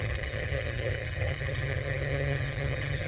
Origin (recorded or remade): remade